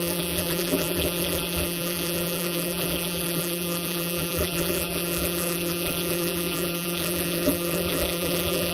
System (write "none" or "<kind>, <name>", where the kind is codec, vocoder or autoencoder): vocoder, BigVGAN v2